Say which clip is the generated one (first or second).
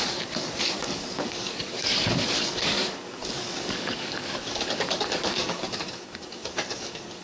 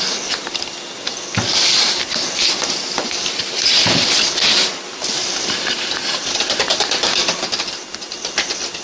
first